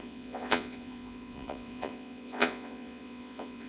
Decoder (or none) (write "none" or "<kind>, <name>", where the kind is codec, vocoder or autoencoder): vocoder, Vocos